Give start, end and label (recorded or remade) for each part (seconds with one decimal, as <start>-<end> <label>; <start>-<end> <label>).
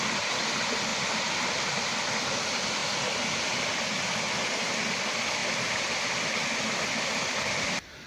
0.0-0.9 recorded; 0.9-1.9 remade; 1.9-5.4 recorded; 5.4-5.9 remade; 5.9-8.1 recorded